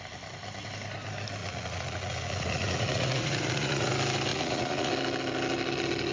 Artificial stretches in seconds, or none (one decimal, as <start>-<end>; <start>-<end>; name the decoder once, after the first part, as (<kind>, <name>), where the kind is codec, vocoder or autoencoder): 1.4-3.9 (vocoder, Vocos); 4.3-4.9